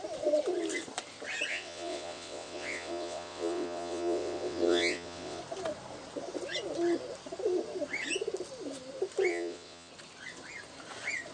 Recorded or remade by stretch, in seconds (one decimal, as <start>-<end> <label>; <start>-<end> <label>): 0.0-1.5 recorded; 1.5-5.4 remade; 5.4-9.3 recorded; 9.3-9.9 remade; 9.9-11.3 recorded